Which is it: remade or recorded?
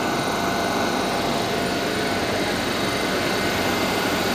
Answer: recorded